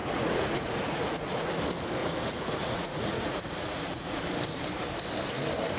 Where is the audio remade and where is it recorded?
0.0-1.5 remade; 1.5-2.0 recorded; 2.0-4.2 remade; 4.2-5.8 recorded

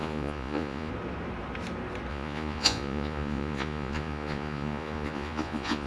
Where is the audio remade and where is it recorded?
0.0-0.9 remade; 0.9-2.1 recorded; 2.1-5.9 remade

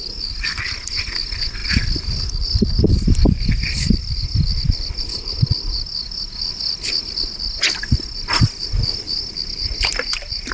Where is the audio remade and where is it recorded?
0.0-10.5 recorded

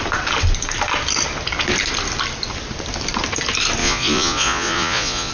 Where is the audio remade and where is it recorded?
0.0-3.8 recorded; 3.8-5.3 remade

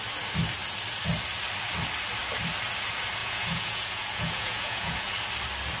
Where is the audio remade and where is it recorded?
0.0-3.2 recorded; 3.2-5.1 remade; 5.1-5.8 recorded

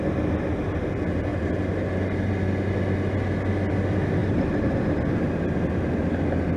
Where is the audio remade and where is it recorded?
0.0-6.6 recorded

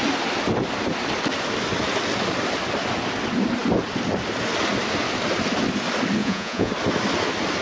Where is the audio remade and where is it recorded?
0.0-6.2 recorded; 6.2-6.7 remade; 6.7-7.6 recorded

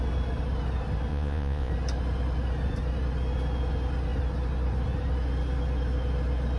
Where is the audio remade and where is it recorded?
0.0-1.1 recorded; 1.1-1.7 remade; 1.7-6.6 recorded